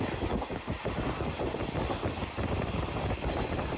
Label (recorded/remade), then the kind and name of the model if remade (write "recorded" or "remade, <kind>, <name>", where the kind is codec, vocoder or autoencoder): recorded